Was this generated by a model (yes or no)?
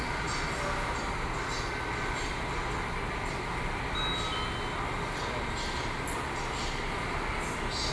no